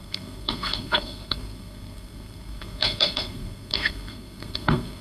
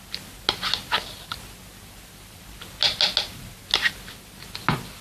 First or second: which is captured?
second